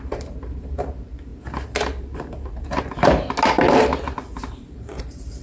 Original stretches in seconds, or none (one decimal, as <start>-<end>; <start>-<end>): 1.3-4.4